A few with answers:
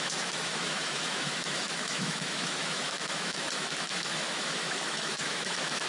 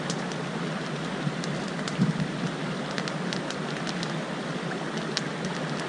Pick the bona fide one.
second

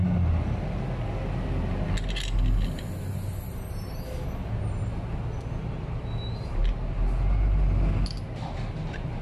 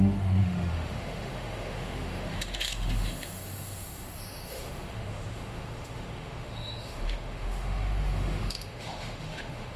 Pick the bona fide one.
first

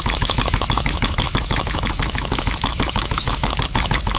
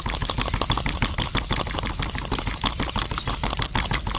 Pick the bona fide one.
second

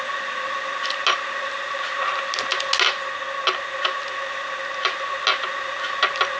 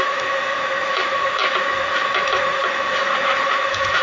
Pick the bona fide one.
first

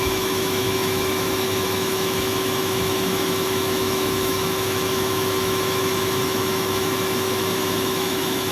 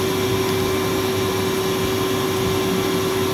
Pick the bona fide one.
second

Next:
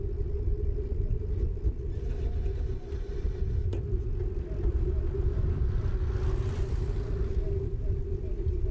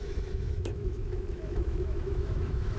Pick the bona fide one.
first